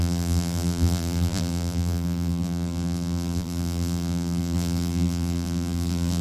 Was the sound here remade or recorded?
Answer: remade